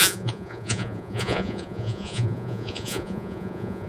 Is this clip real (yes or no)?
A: no